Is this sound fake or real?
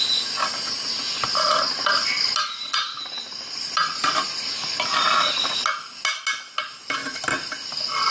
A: real